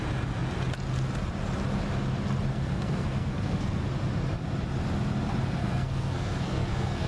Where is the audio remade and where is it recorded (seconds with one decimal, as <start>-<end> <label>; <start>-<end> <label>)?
0.0-2.5 recorded; 2.5-3.8 remade; 3.8-5.6 recorded; 5.6-7.1 remade